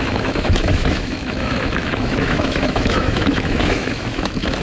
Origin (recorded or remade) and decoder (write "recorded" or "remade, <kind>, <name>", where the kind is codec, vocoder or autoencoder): remade, autoencoder, DAC-VAE